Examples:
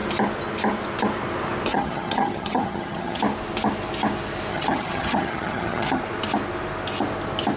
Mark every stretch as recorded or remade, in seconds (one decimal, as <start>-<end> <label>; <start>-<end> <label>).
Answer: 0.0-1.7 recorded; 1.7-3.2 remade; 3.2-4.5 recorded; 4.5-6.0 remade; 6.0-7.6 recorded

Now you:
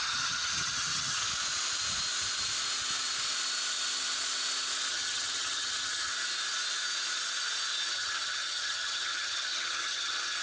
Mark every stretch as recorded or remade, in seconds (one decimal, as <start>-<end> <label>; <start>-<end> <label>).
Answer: 0.0-1.2 remade; 1.2-4.9 recorded; 4.9-6.1 remade; 6.1-7.9 recorded; 7.9-10.4 remade

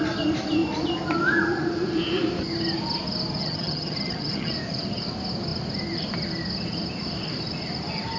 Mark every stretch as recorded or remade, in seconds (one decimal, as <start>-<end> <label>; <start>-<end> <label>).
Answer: 0.0-3.4 recorded; 3.4-4.5 remade; 4.5-8.2 recorded

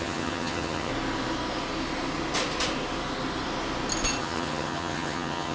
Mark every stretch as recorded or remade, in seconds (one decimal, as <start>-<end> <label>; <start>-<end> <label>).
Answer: 0.0-0.9 remade; 0.9-4.2 recorded; 4.2-5.5 remade